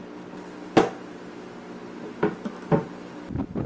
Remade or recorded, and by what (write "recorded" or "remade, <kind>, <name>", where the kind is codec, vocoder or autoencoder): recorded